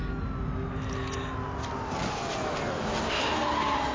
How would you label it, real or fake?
real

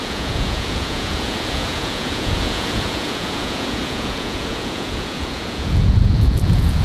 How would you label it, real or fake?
fake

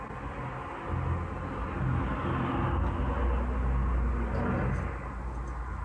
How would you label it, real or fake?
real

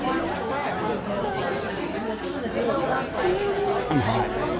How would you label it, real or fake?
real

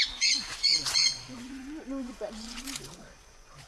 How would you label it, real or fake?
fake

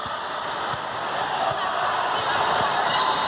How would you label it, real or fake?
real